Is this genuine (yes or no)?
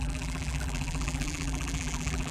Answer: no